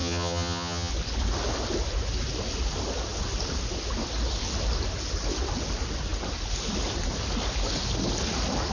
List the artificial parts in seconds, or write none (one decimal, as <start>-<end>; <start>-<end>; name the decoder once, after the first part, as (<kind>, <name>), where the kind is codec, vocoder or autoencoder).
0.0-0.9 (vocoder, HiFi-GAN)